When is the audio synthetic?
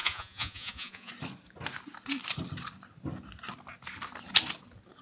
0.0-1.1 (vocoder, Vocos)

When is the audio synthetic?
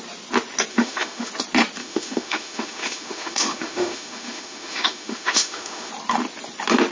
0.7-1.3 (autoencoder, DAC-VAE); 1.8-5.9